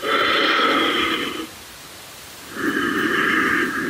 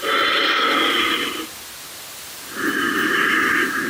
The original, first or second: second